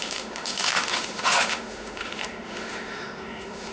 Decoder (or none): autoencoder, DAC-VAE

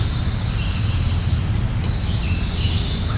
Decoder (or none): none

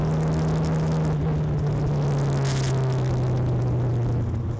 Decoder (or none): none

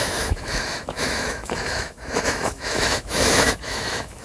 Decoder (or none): autoencoder, DAC-VAE